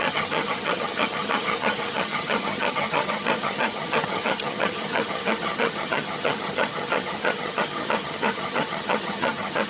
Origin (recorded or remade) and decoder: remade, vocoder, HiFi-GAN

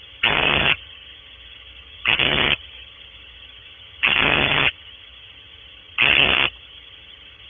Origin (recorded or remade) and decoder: remade, vocoder, HiFi-GAN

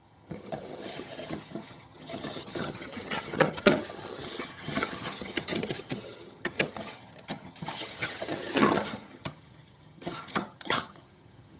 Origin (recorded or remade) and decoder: remade, vocoder, HiFi-GAN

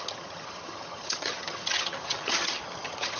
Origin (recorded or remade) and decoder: remade, vocoder, HiFi-GAN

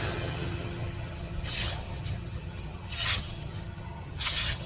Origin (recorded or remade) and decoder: remade, vocoder, HiFi-GAN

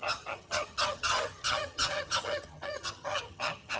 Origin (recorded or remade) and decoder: remade, vocoder, HiFi-GAN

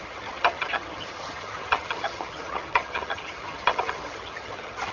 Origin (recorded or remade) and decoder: remade, vocoder, HiFi-GAN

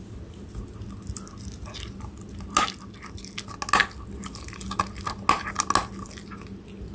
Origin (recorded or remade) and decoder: recorded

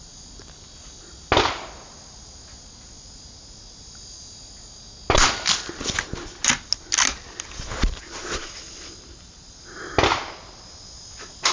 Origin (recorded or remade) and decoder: recorded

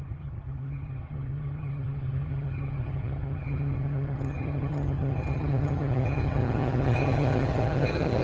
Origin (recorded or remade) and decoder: remade, vocoder, HiFi-GAN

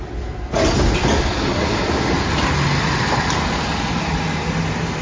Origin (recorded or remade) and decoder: recorded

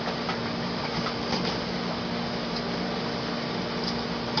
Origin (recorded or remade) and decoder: recorded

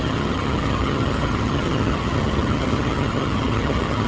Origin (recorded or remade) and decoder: remade, vocoder, HiFi-GAN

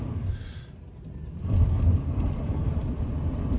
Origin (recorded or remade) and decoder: recorded